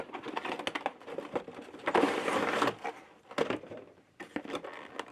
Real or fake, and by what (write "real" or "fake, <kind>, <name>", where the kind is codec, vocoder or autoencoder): real